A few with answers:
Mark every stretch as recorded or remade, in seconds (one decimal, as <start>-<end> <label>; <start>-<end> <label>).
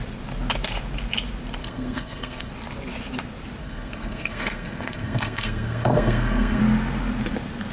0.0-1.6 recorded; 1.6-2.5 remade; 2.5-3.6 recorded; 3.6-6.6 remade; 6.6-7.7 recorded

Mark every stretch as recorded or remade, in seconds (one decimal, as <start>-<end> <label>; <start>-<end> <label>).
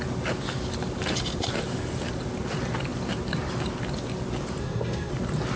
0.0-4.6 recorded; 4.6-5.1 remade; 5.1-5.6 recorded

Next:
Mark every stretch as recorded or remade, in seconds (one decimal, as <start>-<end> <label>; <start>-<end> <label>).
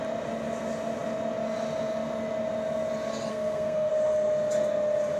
0.0-3.3 recorded; 3.3-3.9 remade; 3.9-5.2 recorded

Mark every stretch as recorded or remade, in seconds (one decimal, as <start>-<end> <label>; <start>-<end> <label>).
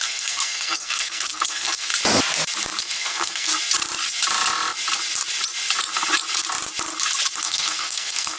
0.0-1.9 remade; 1.9-2.8 recorded; 2.8-3.5 remade; 3.5-7.4 recorded; 7.4-8.4 remade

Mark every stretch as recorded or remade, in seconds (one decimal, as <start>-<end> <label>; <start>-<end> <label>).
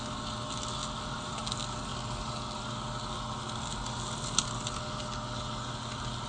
0.0-6.3 recorded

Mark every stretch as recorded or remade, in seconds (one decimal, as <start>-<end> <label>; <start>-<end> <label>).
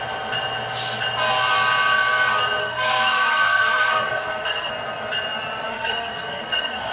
0.0-2.6 recorded; 2.6-4.7 remade; 4.7-5.7 recorded; 5.7-6.9 remade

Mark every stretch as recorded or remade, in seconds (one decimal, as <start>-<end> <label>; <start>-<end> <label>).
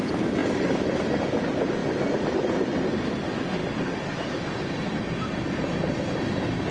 0.0-6.7 recorded